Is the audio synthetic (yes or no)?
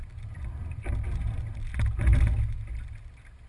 no